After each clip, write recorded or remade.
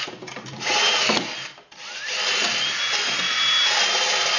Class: recorded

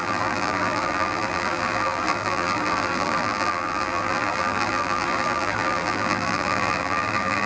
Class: remade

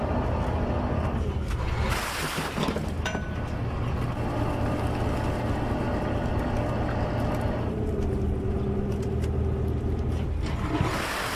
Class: recorded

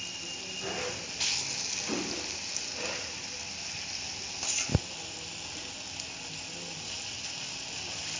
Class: recorded